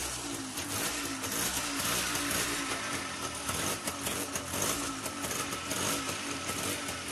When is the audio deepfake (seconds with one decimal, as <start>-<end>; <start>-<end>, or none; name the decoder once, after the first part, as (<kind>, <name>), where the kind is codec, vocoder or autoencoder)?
0.0-7.1 (vocoder, BigVGAN v2)